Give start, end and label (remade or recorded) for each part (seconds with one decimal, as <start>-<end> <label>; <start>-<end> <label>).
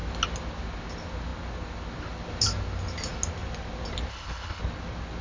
0.0-4.1 recorded; 4.1-4.6 remade; 4.6-5.2 recorded